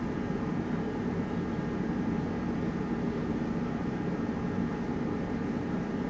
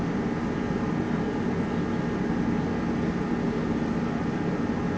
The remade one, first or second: first